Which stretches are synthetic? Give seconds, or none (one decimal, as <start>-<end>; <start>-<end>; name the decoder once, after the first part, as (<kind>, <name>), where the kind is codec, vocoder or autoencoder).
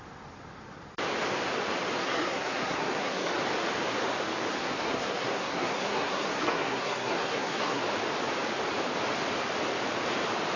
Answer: 2.0-3.3 (codec, SNAC); 4.5-7.8